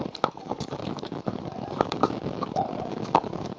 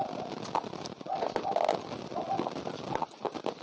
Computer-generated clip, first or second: first